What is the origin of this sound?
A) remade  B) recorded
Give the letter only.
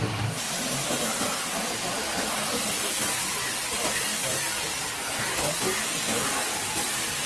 B